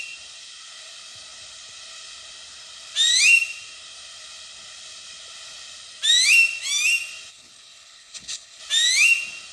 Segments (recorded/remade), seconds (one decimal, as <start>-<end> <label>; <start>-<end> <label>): 0.0-7.3 recorded; 7.3-8.6 remade; 8.6-9.5 recorded